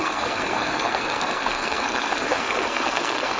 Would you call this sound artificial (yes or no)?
yes